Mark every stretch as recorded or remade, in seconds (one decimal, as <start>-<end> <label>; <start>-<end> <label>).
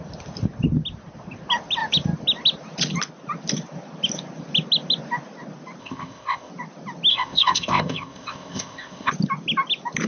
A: 0.0-5.8 recorded; 5.8-6.5 remade; 6.5-7.1 recorded; 7.1-9.1 remade; 9.1-10.1 recorded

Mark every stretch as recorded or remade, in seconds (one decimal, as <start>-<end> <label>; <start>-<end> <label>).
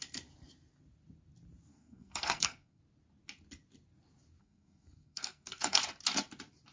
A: 0.0-1.7 recorded; 1.7-2.8 remade; 2.8-4.4 recorded; 4.4-5.8 remade; 5.8-6.7 recorded